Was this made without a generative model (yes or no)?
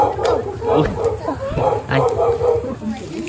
yes